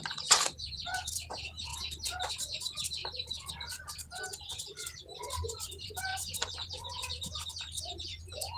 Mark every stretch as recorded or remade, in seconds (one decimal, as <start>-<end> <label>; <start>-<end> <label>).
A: 0.0-3.0 recorded; 3.0-3.5 remade; 3.5-4.3 recorded; 4.3-5.0 remade; 5.0-8.6 recorded

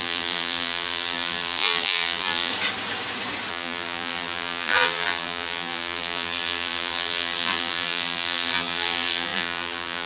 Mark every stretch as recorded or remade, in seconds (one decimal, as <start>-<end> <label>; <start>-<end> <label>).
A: 0.0-2.5 remade; 2.5-3.5 recorded; 3.5-10.1 remade

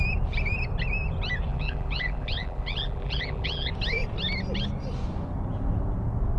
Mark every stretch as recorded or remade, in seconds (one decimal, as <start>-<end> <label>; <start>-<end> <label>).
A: 0.0-1.5 recorded; 1.5-3.7 remade; 3.7-6.4 recorded

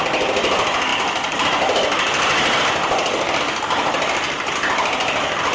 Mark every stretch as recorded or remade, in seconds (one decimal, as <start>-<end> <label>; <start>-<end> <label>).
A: 0.0-5.5 recorded

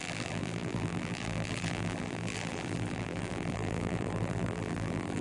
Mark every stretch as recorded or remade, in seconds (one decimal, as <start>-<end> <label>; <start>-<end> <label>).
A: 0.0-5.2 remade